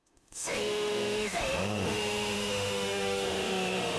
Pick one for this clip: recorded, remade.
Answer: remade